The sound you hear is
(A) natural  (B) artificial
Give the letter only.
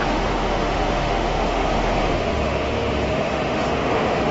B